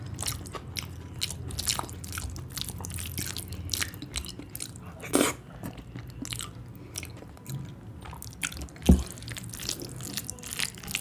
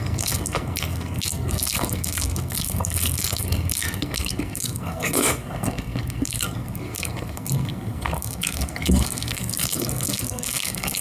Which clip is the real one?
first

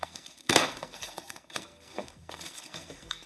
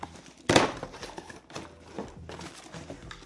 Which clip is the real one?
second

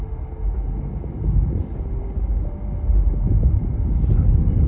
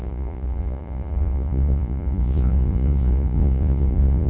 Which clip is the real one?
first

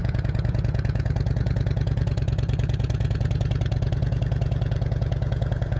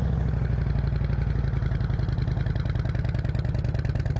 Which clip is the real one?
second